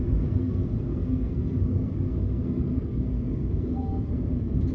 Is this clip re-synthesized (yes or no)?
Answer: yes